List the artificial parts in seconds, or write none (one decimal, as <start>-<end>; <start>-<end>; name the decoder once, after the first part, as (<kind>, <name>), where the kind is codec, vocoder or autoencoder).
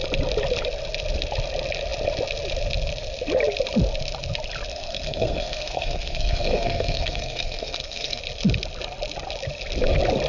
4.7-8.2 (codec, SNAC)